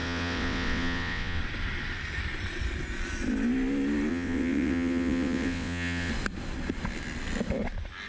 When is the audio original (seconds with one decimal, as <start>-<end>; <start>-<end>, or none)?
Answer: 1.4-4.1; 6.1-8.1